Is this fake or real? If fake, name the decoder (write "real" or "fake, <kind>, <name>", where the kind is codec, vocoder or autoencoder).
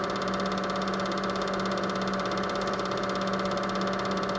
real